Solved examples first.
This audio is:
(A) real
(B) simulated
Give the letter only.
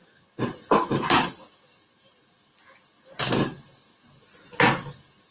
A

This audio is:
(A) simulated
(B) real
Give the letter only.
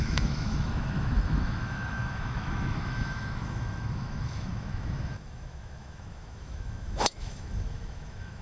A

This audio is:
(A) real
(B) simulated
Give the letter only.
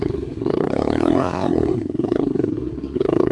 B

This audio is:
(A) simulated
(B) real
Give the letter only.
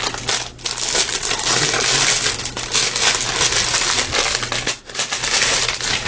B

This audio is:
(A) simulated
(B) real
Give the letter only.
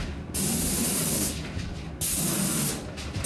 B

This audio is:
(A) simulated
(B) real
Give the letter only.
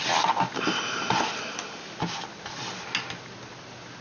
B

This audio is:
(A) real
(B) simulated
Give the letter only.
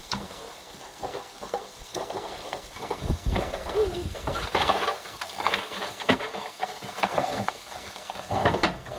B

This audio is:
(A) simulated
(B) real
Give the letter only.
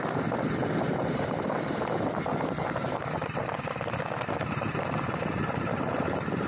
B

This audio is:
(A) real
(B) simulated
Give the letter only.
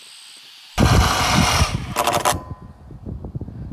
A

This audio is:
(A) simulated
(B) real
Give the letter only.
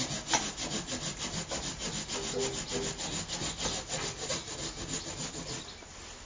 B